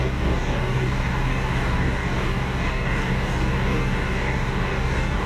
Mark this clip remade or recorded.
remade